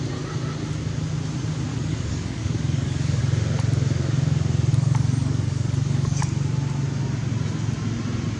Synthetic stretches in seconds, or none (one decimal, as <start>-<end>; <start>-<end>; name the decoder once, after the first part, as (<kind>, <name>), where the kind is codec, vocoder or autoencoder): 1.7-3.2 (codec, DAC); 4.7-6.2